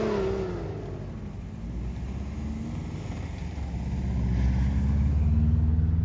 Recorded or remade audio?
recorded